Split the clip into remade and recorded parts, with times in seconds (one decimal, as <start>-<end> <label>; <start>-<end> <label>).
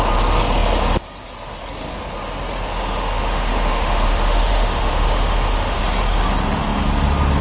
0.0-2.7 recorded; 2.7-5.8 remade; 5.8-7.4 recorded